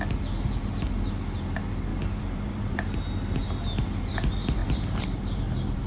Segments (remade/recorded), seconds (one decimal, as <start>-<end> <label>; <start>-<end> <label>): 0.0-1.9 recorded; 1.9-2.6 remade; 2.6-4.6 recorded; 4.6-5.9 remade